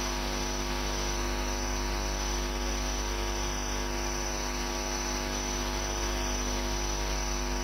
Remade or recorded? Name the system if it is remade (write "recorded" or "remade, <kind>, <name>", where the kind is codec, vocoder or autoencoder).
recorded